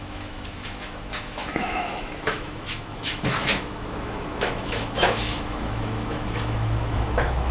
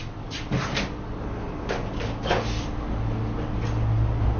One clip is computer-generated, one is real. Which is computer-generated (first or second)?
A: first